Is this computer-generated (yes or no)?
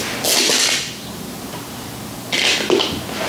no